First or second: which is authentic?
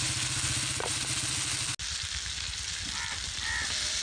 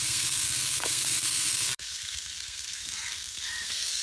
first